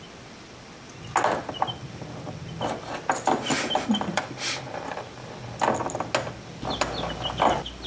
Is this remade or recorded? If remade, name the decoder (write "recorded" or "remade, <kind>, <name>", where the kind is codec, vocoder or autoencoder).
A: recorded